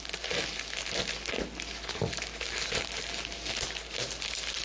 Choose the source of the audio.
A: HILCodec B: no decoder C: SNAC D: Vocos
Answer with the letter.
B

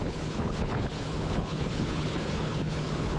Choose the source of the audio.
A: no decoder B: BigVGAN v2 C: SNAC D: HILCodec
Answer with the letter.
D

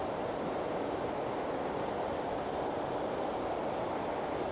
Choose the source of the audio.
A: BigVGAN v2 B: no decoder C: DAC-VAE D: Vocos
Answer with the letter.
B